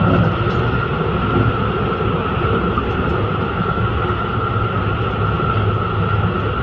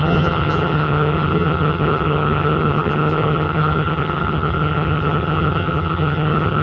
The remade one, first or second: second